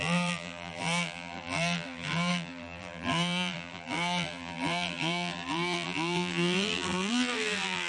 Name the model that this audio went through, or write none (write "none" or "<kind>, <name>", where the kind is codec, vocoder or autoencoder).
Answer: vocoder, BigVGAN v2